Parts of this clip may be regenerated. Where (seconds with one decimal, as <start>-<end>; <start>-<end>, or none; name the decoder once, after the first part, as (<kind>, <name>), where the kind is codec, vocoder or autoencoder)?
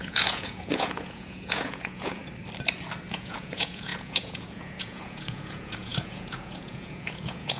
0.0-2.2 (vocoder, Vocos); 3.1-7.6